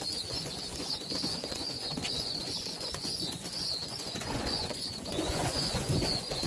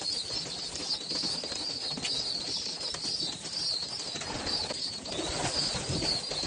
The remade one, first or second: first